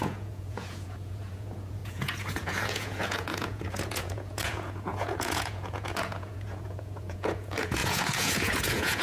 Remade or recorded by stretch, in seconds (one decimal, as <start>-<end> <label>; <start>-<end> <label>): 0.0-9.0 remade